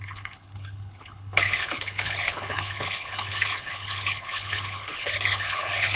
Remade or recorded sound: remade